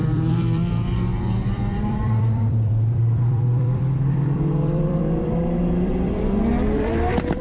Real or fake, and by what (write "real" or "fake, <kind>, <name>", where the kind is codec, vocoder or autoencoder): fake, vocoder, BigVGAN v2